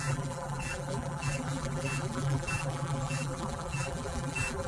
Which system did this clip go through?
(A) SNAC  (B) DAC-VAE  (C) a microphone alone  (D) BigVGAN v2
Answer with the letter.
D